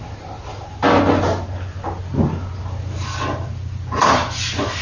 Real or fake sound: real